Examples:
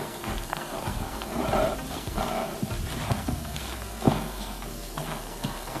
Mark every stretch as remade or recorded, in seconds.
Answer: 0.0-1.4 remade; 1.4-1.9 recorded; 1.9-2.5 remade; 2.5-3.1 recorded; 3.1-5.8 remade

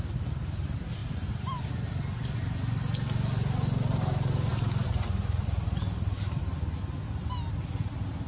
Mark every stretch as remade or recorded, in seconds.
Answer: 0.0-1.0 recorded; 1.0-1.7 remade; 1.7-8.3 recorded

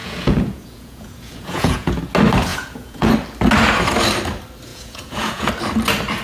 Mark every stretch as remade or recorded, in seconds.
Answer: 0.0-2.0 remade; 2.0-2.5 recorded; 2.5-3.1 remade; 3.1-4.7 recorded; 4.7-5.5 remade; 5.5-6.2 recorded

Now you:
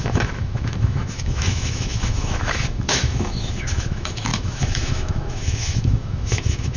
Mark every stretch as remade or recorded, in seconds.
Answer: 0.0-6.8 remade